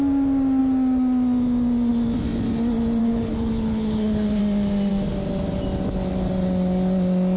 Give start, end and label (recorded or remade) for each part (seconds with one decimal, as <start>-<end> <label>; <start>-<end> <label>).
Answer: 0.0-3.0 recorded; 3.0-4.4 remade; 4.4-7.4 recorded